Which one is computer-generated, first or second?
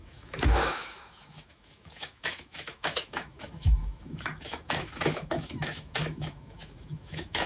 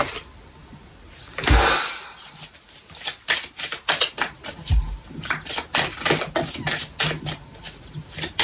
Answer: first